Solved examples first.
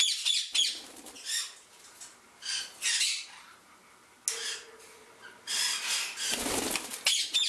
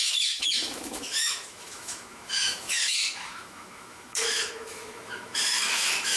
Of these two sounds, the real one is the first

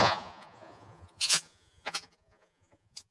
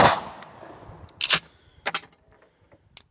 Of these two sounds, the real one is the second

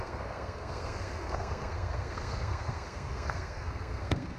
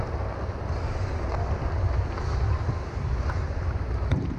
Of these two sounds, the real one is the second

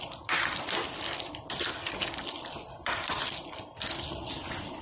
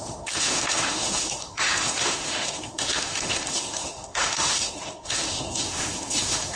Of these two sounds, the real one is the first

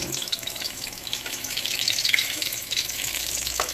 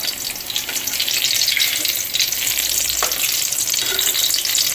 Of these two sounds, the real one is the second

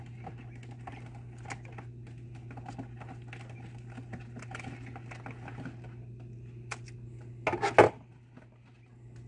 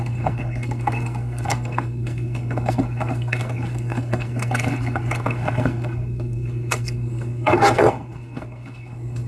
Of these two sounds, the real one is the first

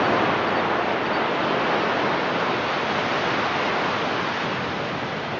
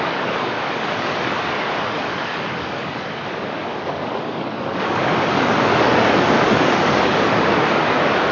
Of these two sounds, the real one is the first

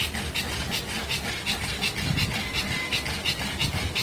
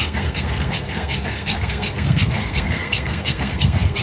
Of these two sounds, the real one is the first